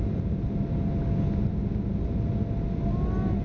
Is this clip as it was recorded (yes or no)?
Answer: yes